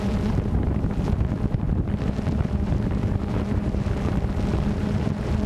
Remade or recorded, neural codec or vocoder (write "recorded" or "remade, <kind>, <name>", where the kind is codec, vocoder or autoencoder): remade, vocoder, BigVGAN v2